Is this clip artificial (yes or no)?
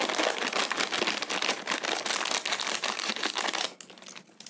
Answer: no